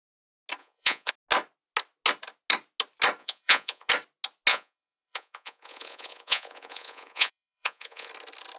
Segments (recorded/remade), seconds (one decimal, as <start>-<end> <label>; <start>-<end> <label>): 0.0-0.6 recorded; 0.6-1.1 remade; 1.1-3.2 recorded; 3.2-3.9 remade; 3.9-4.5 recorded; 4.5-8.1 remade; 8.1-8.6 recorded